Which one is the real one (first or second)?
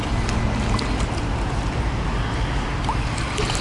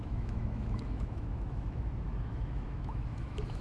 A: first